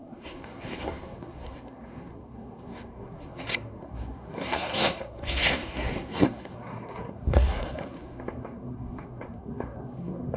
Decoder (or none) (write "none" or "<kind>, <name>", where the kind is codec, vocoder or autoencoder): codec, SNAC